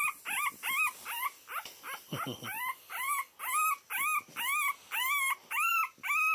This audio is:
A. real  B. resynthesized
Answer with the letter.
A